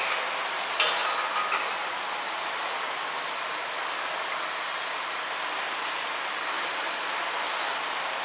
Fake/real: real